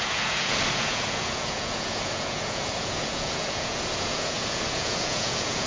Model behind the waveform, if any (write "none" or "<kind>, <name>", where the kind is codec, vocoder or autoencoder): vocoder, Vocos